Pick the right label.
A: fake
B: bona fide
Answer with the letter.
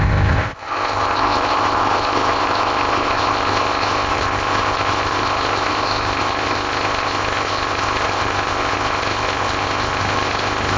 A